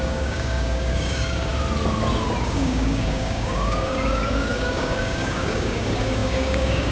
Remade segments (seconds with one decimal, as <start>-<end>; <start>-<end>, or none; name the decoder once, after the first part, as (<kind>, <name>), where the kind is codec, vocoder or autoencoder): 0.0-1.5 (codec, DAC); 2.4-6.9